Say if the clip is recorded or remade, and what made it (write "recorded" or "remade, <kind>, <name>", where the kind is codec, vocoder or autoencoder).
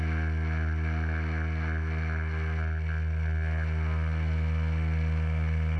recorded